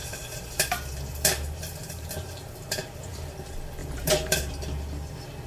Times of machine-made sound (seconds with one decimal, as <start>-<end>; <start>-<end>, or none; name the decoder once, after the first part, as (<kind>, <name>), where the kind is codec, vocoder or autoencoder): 0.0-3.3 (vocoder, BigVGAN v2); 3.8-4.5